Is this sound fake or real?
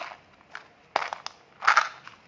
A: real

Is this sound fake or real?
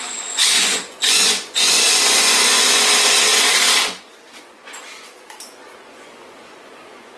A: fake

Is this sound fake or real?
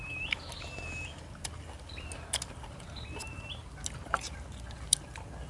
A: real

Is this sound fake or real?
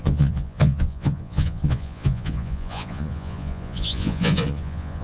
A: fake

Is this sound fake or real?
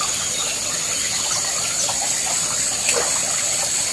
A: real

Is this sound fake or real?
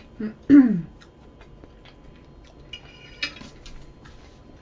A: real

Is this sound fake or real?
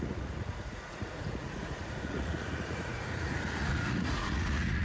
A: fake